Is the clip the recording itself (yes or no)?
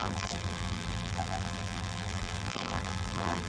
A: no